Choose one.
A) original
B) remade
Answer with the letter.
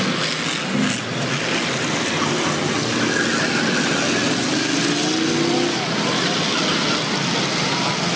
A